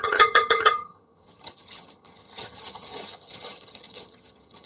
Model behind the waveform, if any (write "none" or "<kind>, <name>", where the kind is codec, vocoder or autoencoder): vocoder, HiFi-GAN